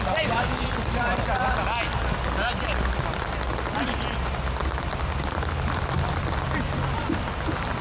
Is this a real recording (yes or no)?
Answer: yes